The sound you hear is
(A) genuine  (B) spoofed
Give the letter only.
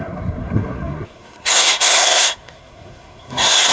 B